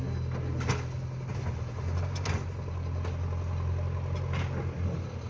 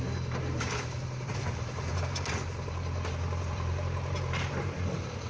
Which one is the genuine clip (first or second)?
first